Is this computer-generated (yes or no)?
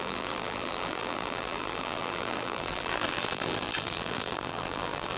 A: yes